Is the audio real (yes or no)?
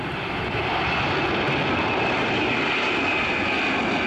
yes